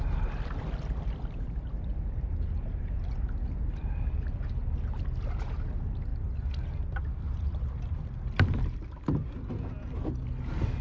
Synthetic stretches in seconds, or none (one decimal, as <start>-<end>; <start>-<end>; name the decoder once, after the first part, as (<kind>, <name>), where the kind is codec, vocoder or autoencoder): none